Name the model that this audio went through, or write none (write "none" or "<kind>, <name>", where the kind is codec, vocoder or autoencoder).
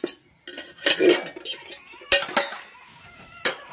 none